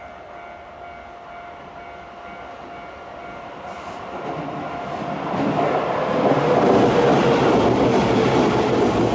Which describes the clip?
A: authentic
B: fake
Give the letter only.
A